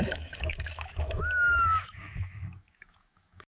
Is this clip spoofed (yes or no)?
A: yes